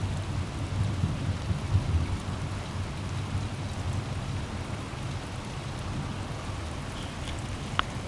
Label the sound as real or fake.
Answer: real